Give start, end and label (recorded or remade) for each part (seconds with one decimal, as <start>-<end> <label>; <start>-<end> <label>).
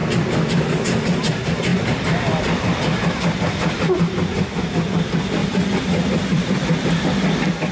0.0-0.7 remade; 0.7-1.7 recorded; 1.7-4.0 remade; 4.0-5.4 recorded; 5.4-6.7 remade; 6.7-7.7 recorded